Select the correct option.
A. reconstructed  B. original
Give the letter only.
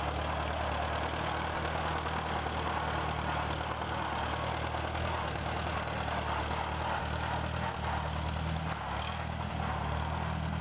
B